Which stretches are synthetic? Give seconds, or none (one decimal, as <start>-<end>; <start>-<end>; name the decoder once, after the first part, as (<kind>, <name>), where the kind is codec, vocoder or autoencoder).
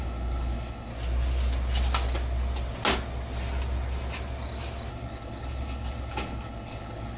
0.0-0.9 (codec, HILCodec); 4.9-7.2